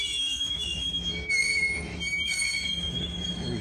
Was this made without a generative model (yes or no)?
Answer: no